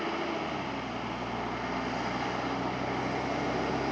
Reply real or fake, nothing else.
real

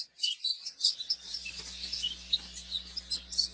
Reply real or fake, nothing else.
real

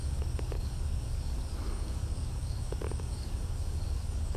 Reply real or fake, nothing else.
fake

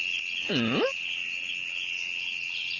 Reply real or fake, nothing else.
real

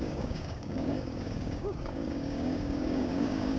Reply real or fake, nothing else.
fake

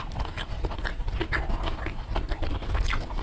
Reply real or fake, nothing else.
real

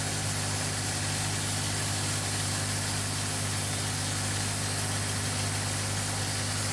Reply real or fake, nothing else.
real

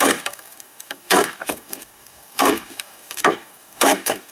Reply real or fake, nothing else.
fake